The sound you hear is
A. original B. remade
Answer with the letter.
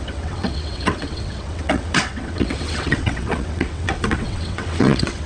B